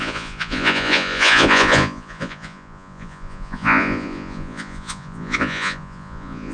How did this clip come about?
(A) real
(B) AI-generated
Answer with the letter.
B